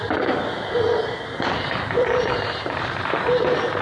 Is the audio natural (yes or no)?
no